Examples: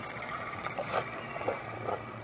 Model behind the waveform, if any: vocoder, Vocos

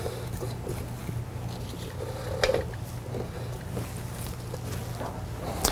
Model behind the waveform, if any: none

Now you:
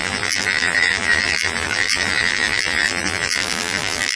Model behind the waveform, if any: vocoder, BigVGAN v2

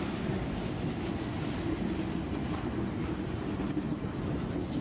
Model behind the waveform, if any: vocoder, BigVGAN v2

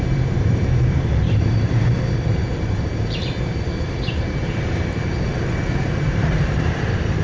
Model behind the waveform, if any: vocoder, BigVGAN v2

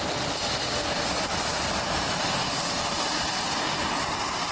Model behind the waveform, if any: none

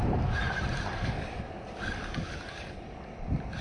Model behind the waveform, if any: none